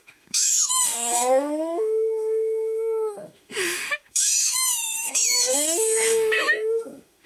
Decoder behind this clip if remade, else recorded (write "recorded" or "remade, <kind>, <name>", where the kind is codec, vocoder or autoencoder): remade, autoencoder, DAC-VAE